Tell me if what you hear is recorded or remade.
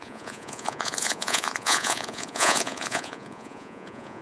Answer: remade